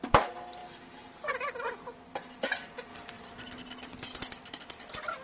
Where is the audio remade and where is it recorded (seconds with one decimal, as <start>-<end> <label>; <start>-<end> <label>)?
0.0-2.9 recorded; 2.9-3.6 remade; 3.6-5.2 recorded